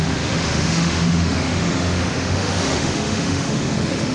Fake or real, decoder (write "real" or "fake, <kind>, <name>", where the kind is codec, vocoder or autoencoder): fake, autoencoder, DAC-VAE